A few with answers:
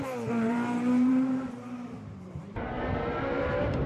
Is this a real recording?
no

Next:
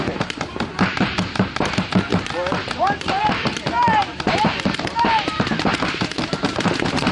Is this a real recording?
no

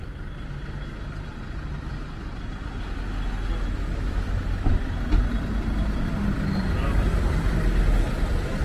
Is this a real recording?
yes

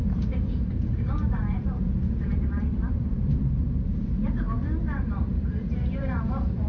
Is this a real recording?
no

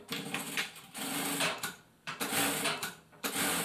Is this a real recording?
no